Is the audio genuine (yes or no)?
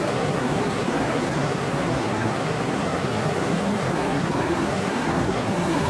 no